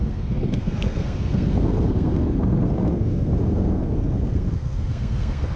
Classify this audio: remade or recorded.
remade